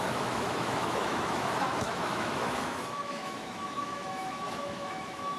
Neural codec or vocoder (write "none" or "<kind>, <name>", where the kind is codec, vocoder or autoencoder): autoencoder, DAC-VAE